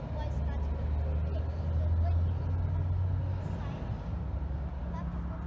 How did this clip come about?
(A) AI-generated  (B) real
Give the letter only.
B